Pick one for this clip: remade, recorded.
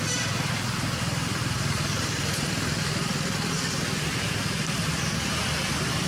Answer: recorded